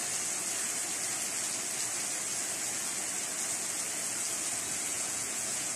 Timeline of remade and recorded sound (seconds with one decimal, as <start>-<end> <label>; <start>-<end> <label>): 0.0-4.9 recorded; 4.9-5.8 remade